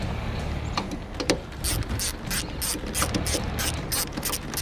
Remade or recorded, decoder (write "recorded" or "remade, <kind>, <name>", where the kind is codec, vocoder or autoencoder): recorded